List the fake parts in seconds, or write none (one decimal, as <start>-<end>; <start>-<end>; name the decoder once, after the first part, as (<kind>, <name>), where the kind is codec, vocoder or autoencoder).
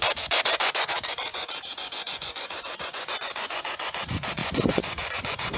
0.0-5.6 (vocoder, Vocos)